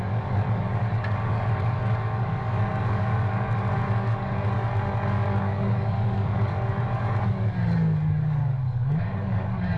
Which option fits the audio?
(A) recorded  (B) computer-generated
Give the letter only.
B